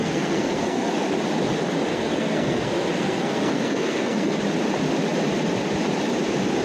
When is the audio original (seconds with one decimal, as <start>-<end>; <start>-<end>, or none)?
0.9-1.9; 4.4-6.6